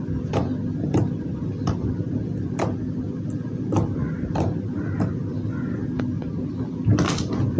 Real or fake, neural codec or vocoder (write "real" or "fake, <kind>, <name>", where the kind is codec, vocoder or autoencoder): real